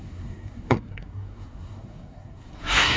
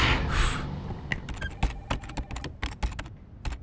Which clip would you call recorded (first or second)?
second